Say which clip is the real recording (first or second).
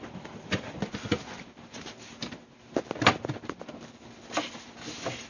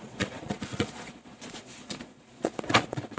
first